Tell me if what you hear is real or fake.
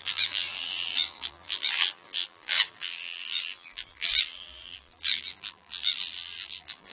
fake